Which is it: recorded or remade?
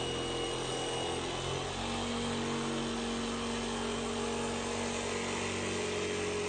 recorded